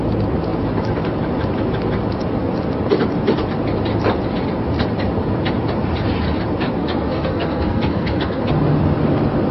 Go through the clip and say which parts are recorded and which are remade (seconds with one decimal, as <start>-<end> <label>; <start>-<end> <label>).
0.0-6.8 recorded; 6.8-8.4 remade; 8.4-9.5 recorded